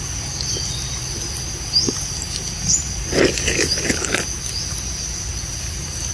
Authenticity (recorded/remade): recorded